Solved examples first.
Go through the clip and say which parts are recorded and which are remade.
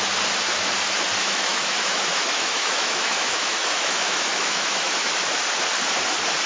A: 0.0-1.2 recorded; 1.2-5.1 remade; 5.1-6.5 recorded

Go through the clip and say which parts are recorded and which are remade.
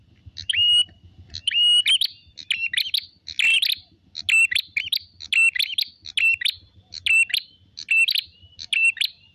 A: 0.0-9.3 recorded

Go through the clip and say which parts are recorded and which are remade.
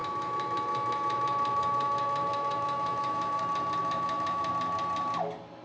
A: 0.0-3.4 remade; 3.4-3.8 recorded; 3.8-4.5 remade; 4.5-5.6 recorded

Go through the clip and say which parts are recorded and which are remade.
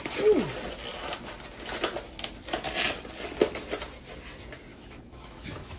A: 0.0-4.7 recorded; 4.7-5.8 remade